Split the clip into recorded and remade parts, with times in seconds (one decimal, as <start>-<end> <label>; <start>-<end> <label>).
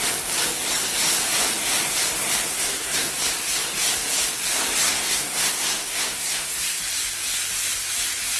0.0-2.5 recorded; 2.5-3.1 remade; 3.1-4.8 recorded; 4.8-6.8 remade; 6.8-8.4 recorded